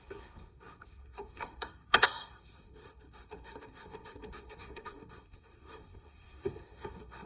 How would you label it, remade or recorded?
remade